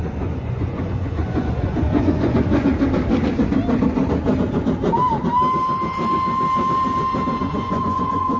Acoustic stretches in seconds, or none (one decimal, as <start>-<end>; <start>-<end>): 2.7-7.4